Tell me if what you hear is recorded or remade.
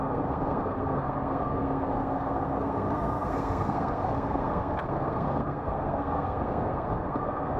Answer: remade